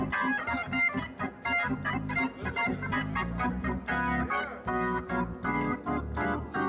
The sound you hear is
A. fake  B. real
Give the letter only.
B